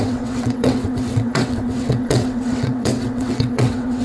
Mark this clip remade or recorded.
remade